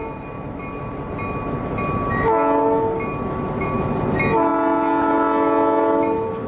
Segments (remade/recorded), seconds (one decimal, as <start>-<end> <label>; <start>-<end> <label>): 0.0-6.5 recorded